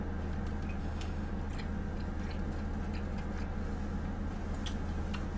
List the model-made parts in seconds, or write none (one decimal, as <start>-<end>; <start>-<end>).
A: 0.8-1.3